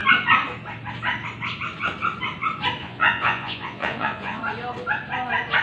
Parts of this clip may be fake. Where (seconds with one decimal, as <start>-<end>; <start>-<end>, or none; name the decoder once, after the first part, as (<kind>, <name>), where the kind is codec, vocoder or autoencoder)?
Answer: 2.8-4.4 (vocoder, Vocos)